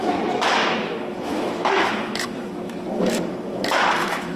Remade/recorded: remade